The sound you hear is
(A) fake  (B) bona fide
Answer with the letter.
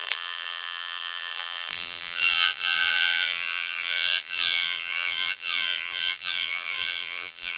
A